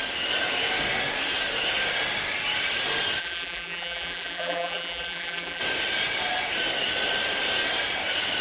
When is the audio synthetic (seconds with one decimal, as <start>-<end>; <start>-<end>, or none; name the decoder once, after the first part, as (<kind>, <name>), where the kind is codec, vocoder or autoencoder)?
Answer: 3.2-5.6 (vocoder, BigVGAN v2)